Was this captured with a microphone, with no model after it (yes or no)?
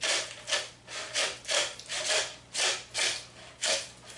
yes